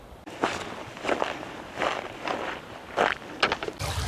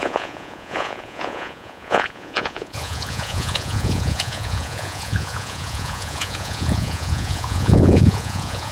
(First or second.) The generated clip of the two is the second